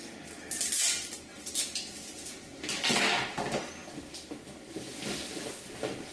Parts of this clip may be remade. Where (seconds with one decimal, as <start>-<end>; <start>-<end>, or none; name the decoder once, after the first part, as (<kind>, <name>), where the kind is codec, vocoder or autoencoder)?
none